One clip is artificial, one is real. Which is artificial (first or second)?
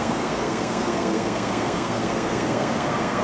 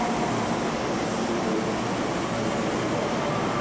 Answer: first